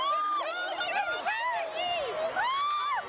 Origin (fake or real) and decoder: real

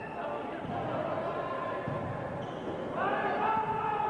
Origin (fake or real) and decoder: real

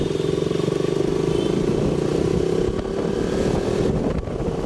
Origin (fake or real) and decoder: real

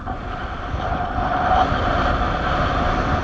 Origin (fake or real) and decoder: real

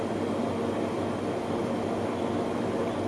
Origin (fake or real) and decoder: real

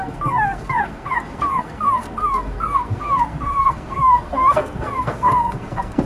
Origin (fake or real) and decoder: fake, codec, SNAC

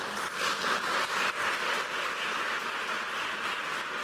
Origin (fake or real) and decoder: real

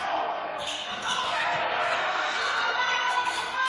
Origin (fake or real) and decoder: fake, codec, SNAC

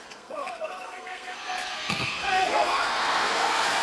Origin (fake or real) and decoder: fake, codec, SNAC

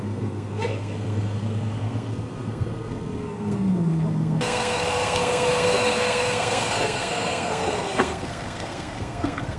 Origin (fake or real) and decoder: fake, codec, SNAC